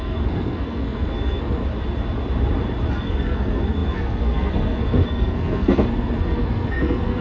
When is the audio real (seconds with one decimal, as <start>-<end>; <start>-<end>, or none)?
1.6-2.9